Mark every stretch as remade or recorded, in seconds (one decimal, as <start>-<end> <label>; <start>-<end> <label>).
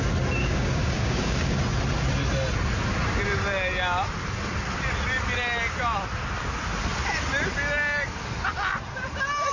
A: 0.0-0.4 recorded; 0.4-1.6 remade; 1.6-9.5 recorded